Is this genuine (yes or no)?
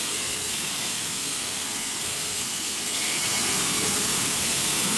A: no